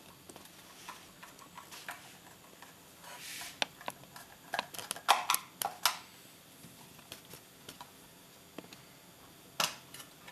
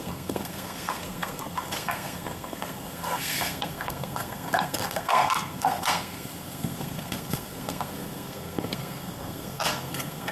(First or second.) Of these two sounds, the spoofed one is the second